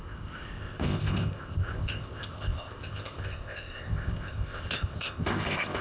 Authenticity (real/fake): fake